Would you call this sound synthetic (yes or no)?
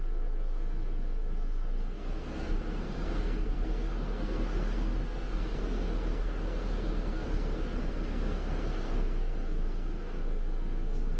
yes